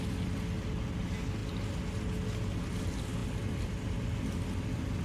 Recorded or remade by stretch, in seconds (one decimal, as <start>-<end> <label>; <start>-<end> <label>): 0.0-5.0 recorded